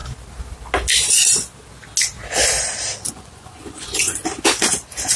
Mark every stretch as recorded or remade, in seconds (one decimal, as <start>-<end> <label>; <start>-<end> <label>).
0.0-3.1 recorded; 3.1-4.1 remade; 4.1-5.2 recorded